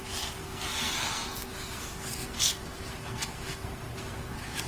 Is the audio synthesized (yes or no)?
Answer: yes